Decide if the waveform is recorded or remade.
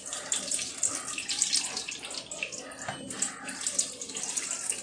recorded